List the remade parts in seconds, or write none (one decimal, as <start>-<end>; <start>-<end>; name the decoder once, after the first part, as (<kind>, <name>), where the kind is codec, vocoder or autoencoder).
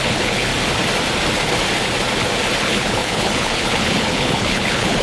0.0-0.5 (codec, HILCodec); 2.6-5.0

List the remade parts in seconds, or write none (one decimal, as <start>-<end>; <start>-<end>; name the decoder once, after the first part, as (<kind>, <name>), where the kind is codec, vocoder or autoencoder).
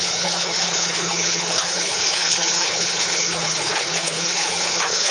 0.0-5.1 (codec, HILCodec)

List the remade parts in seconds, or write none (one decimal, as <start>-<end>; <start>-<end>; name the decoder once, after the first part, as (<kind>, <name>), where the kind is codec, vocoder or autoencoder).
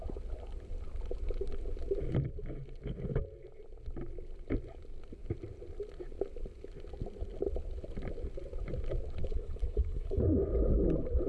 9.2-10.2 (codec, HILCodec)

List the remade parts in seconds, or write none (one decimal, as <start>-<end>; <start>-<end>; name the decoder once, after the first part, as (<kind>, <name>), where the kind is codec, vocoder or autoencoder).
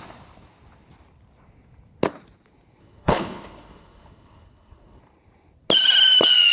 2.8-5.0 (codec, HILCodec)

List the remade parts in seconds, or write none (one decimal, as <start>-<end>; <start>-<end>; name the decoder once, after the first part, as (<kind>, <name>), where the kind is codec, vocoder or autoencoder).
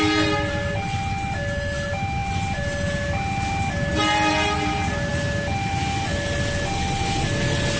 none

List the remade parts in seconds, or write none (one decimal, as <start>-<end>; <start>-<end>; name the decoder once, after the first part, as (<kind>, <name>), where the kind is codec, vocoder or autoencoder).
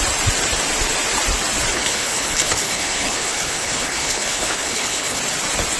1.7-5.2 (codec, HILCodec)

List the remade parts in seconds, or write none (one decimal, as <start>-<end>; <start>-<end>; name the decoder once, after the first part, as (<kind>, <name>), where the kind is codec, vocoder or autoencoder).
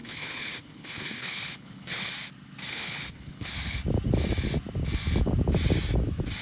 0.0-2.1 (codec, HILCodec); 2.7-3.5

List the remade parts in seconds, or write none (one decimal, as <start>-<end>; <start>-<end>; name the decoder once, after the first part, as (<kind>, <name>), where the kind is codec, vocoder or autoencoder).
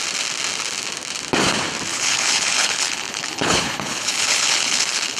1.9-5.2 (codec, HILCodec)